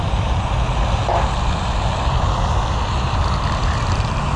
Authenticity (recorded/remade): recorded